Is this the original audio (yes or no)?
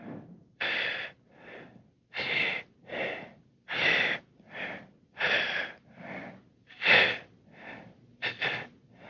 yes